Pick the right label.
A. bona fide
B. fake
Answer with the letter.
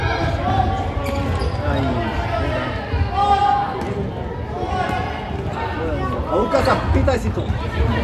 A